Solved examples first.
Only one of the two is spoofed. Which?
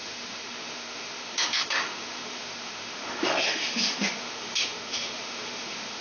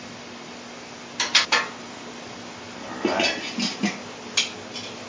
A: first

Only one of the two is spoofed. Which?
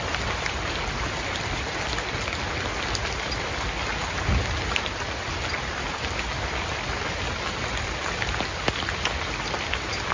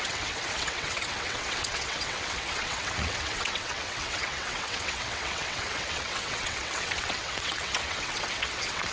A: second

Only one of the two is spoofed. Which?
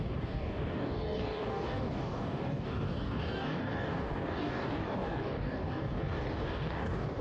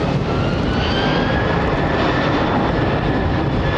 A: first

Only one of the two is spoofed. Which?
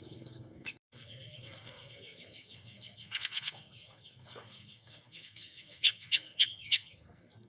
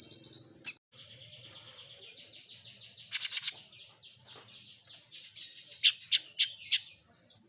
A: first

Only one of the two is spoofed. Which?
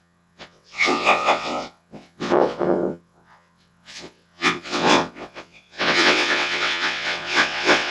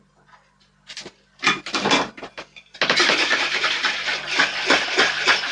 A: first